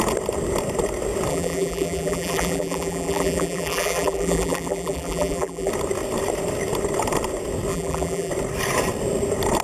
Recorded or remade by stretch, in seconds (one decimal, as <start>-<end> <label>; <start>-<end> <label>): 0.0-1.3 recorded; 1.3-5.7 remade; 5.7-7.7 recorded; 7.7-8.3 remade; 8.3-9.6 recorded